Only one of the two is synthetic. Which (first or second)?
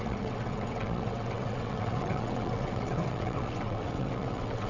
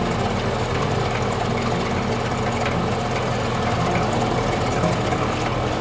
first